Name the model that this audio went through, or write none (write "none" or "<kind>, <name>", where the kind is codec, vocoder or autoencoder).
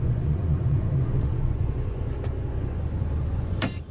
vocoder, Vocos